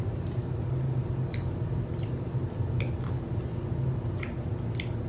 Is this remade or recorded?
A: recorded